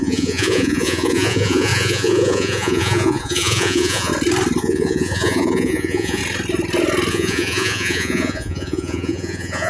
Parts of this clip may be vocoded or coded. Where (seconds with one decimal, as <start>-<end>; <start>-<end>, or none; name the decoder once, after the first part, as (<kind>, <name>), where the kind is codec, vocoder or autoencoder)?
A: 0.0-4.1 (vocoder, Vocos); 4.6-6.2; 7.1-9.7